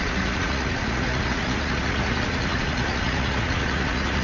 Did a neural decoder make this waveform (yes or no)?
yes